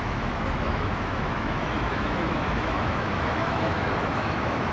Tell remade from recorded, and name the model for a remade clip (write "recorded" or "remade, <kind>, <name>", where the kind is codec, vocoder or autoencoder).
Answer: remade, autoencoder, DAC-VAE